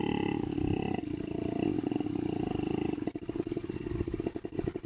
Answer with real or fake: real